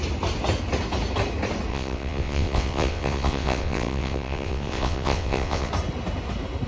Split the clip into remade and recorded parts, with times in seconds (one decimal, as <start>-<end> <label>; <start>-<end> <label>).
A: 0.0-1.7 recorded; 1.7-5.7 remade; 5.7-6.7 recorded

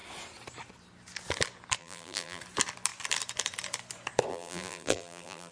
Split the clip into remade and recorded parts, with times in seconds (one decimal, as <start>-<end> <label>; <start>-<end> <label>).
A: 0.0-1.8 recorded; 1.8-2.4 remade; 2.4-4.3 recorded; 4.3-5.5 remade

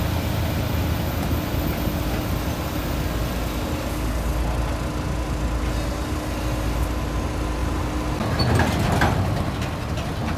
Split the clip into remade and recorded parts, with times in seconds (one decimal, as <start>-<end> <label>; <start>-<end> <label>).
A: 0.0-7.6 recorded; 7.6-10.4 remade

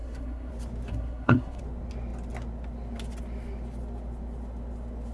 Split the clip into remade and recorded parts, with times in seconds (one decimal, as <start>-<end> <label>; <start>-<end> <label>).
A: 0.0-0.5 remade; 0.5-0.9 recorded; 0.9-1.6 remade; 1.6-5.1 recorded

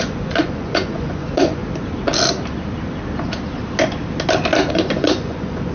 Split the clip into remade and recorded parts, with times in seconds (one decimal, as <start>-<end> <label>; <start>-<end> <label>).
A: 0.0-1.6 remade; 1.6-4.7 recorded; 4.7-5.7 remade

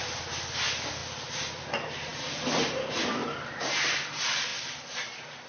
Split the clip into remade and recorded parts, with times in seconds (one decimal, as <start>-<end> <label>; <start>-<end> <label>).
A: 0.0-5.5 recorded

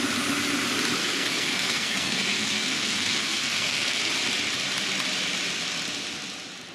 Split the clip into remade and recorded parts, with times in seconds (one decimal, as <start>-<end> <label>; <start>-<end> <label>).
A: 0.0-1.0 recorded; 1.0-4.1 remade; 4.1-6.7 recorded

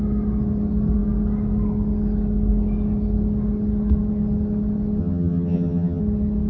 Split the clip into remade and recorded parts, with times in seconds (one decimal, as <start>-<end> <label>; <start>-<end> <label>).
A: 0.0-5.0 recorded; 5.0-6.0 remade; 6.0-6.5 recorded